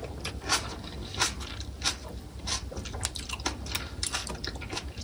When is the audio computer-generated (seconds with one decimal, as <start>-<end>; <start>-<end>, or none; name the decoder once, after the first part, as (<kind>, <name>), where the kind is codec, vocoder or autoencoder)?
none